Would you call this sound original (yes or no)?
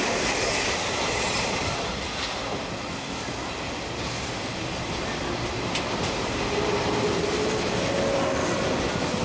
yes